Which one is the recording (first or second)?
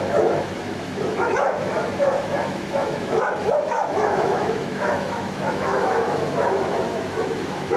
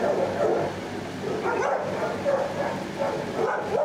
second